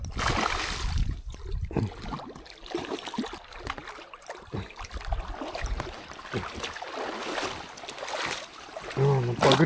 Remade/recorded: recorded